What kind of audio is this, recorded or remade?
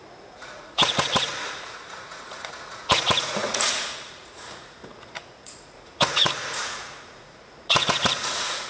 remade